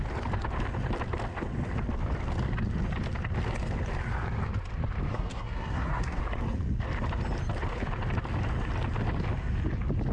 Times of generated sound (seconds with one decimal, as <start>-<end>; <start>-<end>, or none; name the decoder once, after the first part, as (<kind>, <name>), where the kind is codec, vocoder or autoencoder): 5.1-6.2 (codec, SNAC)